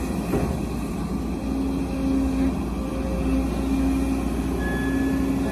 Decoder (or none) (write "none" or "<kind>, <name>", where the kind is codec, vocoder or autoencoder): none